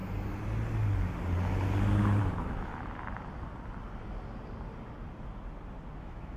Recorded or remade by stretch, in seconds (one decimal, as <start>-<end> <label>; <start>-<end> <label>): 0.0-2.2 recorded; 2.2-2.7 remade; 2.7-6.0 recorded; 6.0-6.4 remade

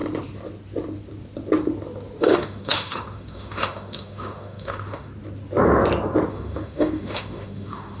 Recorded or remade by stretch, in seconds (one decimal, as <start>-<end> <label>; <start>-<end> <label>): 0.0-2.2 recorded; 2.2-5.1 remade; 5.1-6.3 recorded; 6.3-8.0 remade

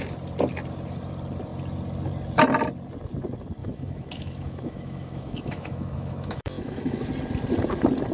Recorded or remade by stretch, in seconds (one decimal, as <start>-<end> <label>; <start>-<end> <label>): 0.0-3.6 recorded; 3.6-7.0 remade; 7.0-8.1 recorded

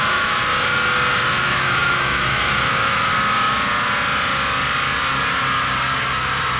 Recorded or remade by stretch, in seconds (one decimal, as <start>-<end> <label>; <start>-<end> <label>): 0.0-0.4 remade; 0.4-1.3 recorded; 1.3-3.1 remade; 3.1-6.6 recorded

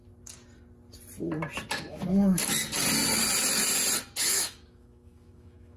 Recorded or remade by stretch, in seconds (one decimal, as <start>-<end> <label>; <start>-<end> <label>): 0.0-1.7 recorded; 1.7-2.4 remade; 2.4-4.2 recorded; 4.2-5.8 remade

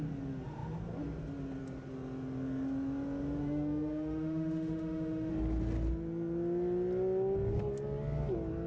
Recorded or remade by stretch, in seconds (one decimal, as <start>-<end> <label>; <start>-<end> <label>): 0.0-3.4 recorded; 3.4-5.3 remade; 5.3-8.7 recorded